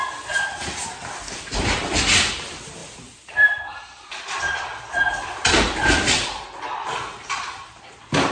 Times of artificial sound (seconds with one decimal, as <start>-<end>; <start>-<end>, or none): 2.8-7.8